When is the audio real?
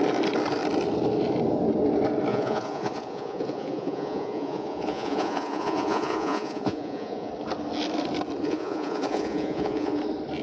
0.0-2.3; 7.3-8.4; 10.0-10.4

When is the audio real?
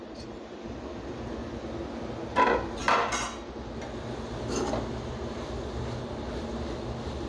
0.8-7.3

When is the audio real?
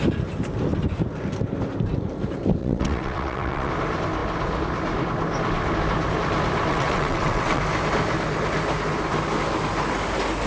0.0-2.6; 3.7-6.7; 7.6-10.5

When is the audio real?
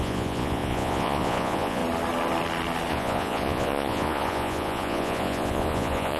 1.8-2.9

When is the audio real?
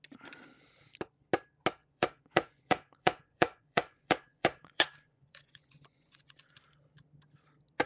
0.0-1.8; 6.5-7.9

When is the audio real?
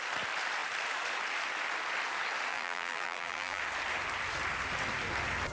0.0-2.5; 3.6-5.5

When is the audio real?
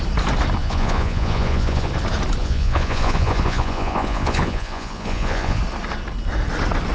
0.0-0.6; 1.9-2.4; 5.6-6.9